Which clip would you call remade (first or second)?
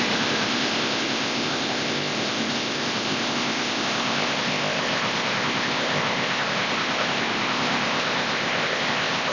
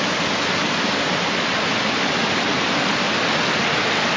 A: first